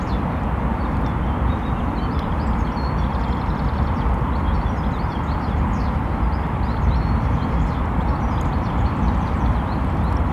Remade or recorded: remade